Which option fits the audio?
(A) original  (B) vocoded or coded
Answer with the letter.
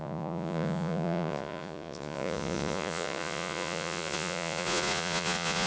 B